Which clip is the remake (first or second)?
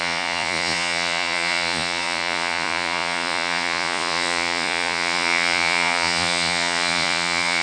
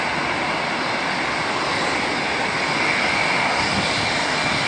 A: first